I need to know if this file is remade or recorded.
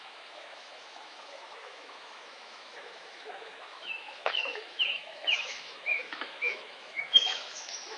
remade